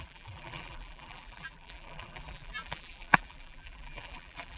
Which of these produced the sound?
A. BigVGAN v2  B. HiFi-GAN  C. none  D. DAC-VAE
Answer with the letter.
A